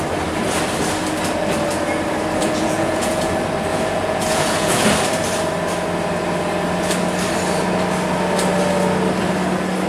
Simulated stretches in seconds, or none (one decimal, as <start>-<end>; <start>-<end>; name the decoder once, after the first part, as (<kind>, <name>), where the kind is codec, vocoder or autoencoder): 2.4-3.3 (vocoder, Vocos); 3.7-4.9